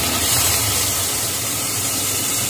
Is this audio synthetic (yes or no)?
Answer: yes